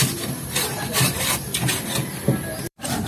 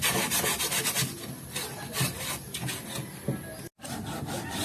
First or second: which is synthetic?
first